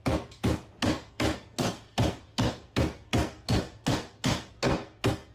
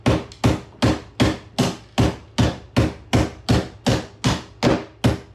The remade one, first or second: first